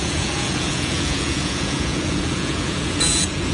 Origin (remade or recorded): remade